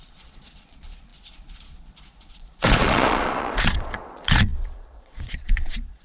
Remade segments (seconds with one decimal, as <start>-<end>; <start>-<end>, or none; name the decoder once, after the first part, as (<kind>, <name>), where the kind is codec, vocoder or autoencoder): 0.0-6.0 (vocoder, Vocos)